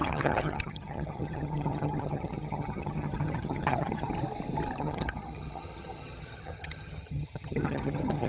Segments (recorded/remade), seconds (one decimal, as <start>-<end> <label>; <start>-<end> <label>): 0.0-4.1 remade; 4.1-4.8 recorded; 4.8-8.3 remade